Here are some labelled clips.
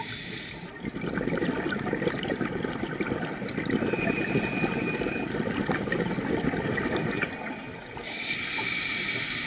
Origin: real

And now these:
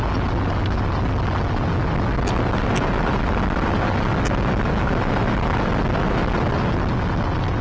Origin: real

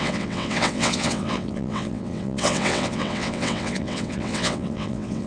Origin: fake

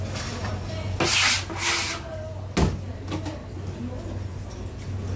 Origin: real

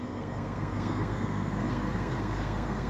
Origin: fake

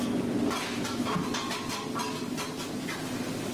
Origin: real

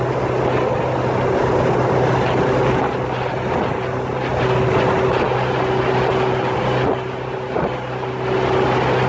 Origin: real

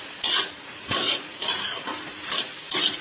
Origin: fake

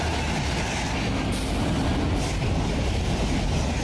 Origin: real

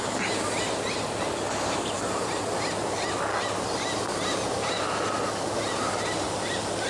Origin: real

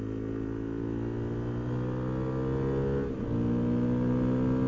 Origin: real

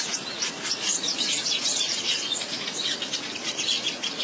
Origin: fake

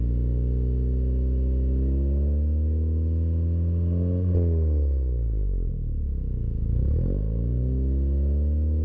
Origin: real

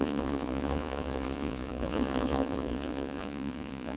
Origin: fake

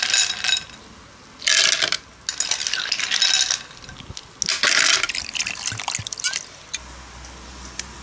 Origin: real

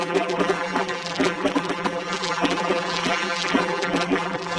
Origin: fake